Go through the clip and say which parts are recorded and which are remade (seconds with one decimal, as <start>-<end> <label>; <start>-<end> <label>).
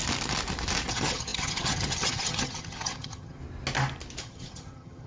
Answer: 0.0-0.9 recorded; 0.9-3.4 remade; 3.4-4.2 recorded; 4.2-5.1 remade